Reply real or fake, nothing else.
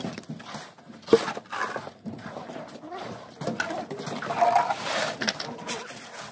real